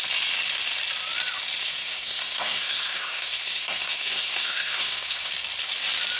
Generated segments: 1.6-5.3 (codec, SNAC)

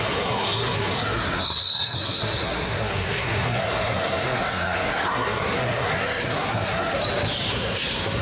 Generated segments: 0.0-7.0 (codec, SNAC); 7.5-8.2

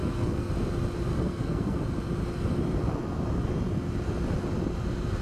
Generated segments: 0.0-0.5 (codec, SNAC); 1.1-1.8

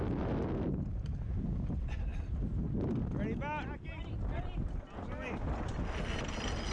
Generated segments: none

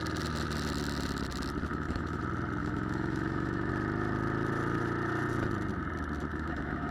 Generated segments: 1.7-2.2 (autoencoder, DAC-VAE); 2.6-3.7; 6.3-6.9